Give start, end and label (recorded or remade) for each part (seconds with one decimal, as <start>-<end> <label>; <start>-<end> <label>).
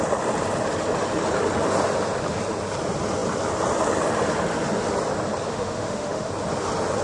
0.0-5.5 recorded; 5.5-6.3 remade; 6.3-7.0 recorded